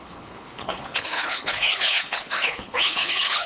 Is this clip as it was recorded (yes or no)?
no